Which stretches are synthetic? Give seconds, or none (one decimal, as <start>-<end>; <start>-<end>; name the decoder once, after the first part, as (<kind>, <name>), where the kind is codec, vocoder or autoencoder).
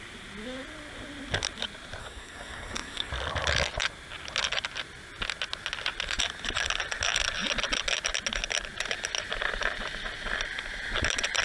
2.0-3.1 (codec, SNAC)